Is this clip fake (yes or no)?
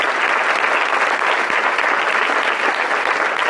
no